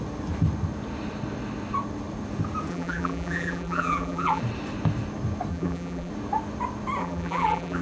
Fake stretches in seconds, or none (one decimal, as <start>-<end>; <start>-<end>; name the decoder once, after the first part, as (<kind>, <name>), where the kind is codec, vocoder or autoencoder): 2.7-4.4 (vocoder, BigVGAN v2); 5.5-6.1; 7.0-7.8